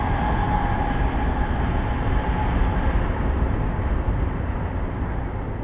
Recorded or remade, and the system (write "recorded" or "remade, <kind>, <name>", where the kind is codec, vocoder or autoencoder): recorded